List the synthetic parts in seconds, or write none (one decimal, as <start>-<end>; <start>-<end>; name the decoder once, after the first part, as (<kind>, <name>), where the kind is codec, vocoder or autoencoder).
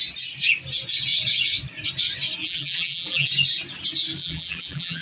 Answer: 2.4-3.3 (vocoder, BigVGAN v2); 4.2-5.0